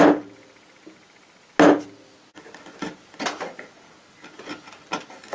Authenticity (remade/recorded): recorded